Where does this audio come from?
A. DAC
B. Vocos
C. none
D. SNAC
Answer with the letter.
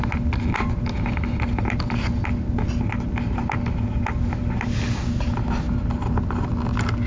C